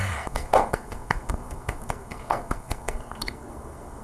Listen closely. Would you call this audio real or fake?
fake